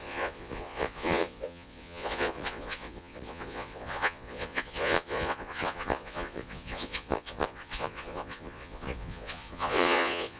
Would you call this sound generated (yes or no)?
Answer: yes